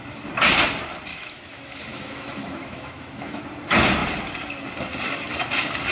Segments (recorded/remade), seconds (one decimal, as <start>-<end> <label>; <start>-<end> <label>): 0.0-1.1 recorded; 1.1-3.4 remade; 3.4-5.9 recorded